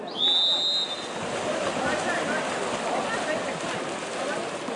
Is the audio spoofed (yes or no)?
no